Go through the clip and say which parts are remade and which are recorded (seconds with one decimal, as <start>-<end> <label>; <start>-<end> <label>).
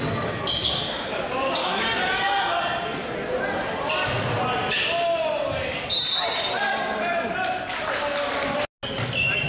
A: 0.0-0.6 recorded; 0.6-1.2 remade; 1.2-1.6 recorded; 1.6-2.6 remade; 2.6-9.5 recorded